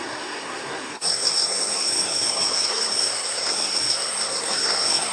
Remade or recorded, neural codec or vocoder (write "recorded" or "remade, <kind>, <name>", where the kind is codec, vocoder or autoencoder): remade, codec, SNAC